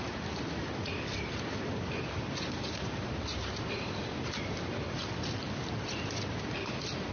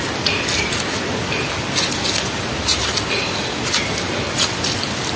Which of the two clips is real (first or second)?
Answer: second